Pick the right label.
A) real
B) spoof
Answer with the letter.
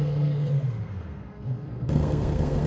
B